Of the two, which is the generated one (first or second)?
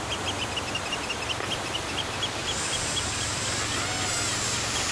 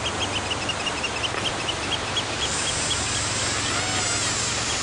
first